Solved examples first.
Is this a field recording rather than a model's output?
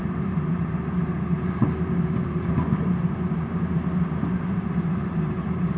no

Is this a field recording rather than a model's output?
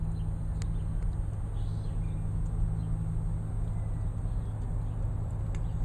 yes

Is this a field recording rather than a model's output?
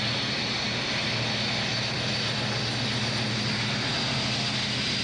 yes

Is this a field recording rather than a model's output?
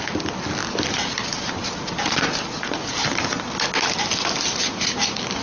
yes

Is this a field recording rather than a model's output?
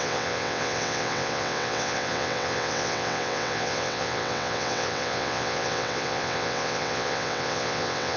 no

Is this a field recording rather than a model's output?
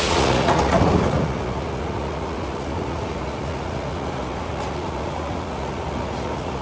no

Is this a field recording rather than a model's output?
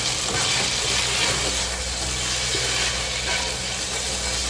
yes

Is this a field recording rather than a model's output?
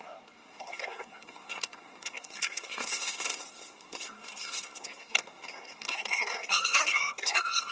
no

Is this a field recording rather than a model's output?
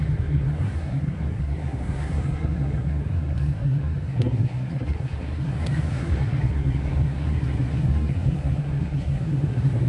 no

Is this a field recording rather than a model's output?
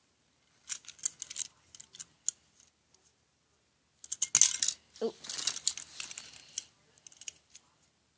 yes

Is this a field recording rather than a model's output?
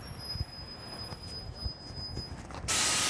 yes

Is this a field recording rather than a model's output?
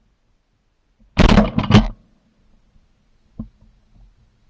yes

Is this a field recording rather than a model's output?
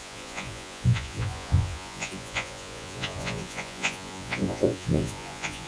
no